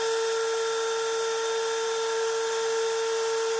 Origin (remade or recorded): recorded